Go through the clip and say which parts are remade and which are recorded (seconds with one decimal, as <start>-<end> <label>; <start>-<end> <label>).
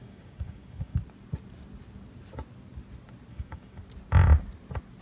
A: 0.0-1.0 remade; 1.0-3.3 recorded; 3.3-3.8 remade; 3.8-5.0 recorded